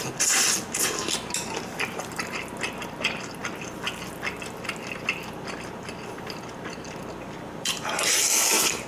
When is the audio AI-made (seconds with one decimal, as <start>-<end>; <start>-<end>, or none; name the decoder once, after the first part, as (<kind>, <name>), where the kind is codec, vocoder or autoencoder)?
none